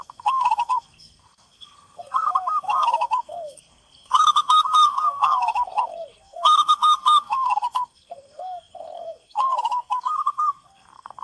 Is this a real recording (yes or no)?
no